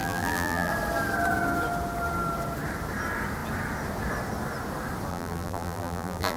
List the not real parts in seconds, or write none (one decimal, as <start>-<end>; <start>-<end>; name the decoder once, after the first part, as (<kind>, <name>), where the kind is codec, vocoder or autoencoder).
0.0-0.7 (vocoder, BigVGAN v2); 5.1-6.4